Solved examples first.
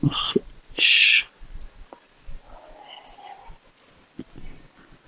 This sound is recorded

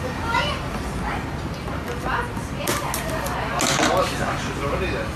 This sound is recorded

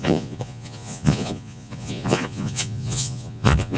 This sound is remade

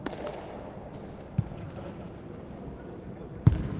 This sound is recorded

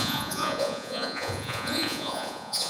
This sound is remade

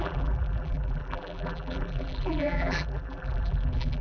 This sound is remade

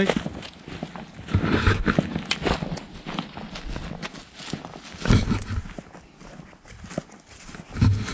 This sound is recorded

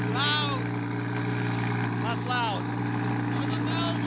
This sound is recorded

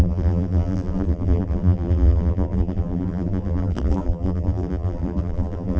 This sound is remade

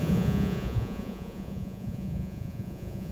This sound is remade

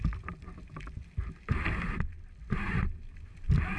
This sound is recorded